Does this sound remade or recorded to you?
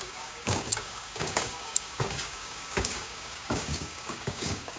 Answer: remade